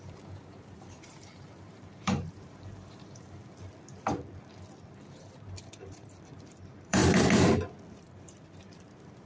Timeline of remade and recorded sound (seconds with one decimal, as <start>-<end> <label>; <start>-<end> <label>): 0.0-3.4 remade; 3.4-4.9 recorded; 4.9-7.0 remade; 7.0-7.9 recorded; 7.9-9.3 remade